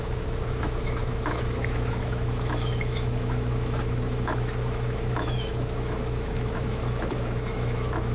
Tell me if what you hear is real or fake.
fake